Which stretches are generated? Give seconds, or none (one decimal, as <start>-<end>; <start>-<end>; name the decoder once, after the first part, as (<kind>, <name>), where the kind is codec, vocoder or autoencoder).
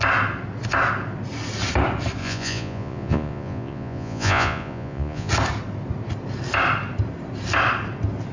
2.2-5.3 (vocoder, Vocos)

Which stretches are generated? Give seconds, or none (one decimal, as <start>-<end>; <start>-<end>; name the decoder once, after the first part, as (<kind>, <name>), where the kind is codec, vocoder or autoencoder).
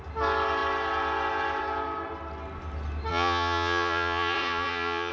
3.1-5.1 (vocoder, Vocos)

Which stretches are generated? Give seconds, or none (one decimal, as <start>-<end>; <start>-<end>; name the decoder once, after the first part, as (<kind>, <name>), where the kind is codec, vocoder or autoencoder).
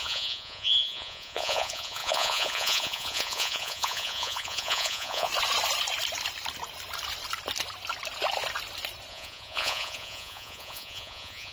0.0-5.3 (vocoder, Vocos); 9.1-11.5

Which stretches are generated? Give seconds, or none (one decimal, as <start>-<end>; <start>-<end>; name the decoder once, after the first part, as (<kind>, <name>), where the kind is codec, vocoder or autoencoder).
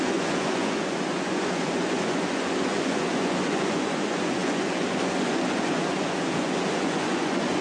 0.0-7.6 (vocoder, Vocos)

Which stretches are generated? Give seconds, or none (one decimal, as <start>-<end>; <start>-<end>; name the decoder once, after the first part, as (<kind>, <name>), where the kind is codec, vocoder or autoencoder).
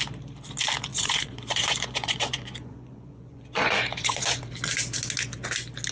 0.9-4.4 (vocoder, Vocos)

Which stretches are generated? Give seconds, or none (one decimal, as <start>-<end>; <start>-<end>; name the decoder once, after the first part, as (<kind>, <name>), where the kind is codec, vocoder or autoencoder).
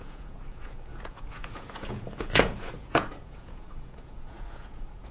0.0-5.1 (vocoder, Vocos)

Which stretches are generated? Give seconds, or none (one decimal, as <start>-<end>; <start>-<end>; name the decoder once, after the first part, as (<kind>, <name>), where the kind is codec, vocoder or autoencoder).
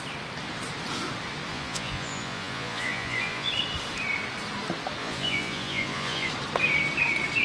1.5-3.5 (vocoder, Vocos); 5.0-6.3